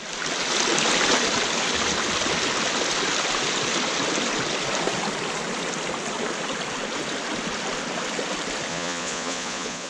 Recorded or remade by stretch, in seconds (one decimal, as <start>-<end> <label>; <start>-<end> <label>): 0.0-8.7 recorded; 8.7-9.9 remade